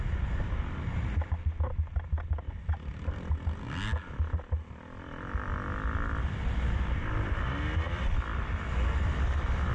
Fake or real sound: real